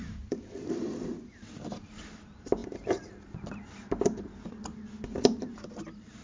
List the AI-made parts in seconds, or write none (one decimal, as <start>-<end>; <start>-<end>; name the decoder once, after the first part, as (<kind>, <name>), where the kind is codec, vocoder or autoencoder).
0.0-1.4 (vocoder, BigVGAN v2)